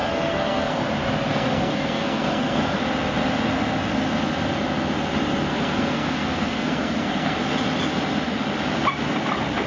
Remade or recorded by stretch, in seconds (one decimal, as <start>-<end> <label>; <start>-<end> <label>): 0.0-0.8 remade; 0.8-1.3 recorded; 1.3-2.8 remade; 2.8-5.5 recorded; 5.5-7.4 remade; 7.4-9.7 recorded